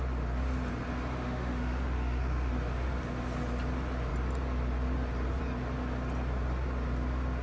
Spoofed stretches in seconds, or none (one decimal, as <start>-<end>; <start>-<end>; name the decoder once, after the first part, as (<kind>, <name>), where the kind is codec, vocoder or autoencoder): 1.1-2.5 (autoencoder, DAC-VAE)